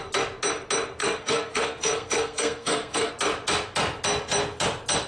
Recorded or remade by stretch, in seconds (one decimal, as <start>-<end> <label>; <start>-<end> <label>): 0.0-1.0 recorded; 1.0-3.1 remade; 3.1-5.1 recorded